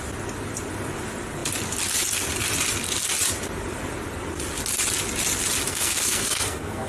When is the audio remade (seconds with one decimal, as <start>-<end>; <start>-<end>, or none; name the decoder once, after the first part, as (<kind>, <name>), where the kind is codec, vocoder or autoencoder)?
5.7-6.9 (codec, SNAC)